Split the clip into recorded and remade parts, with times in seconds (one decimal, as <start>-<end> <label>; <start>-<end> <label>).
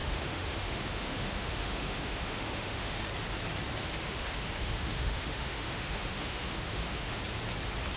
0.0-3.0 remade; 3.0-3.8 recorded; 3.8-7.2 remade; 7.2-8.0 recorded